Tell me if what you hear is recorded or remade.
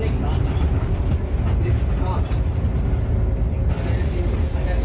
recorded